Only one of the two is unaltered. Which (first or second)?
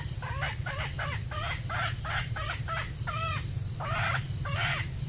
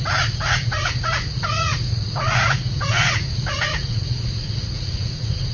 first